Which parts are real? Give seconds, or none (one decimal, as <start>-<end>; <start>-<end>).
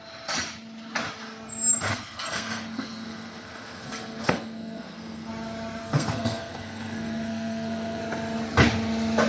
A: 0.0-1.9; 5.3-5.8; 8.0-9.3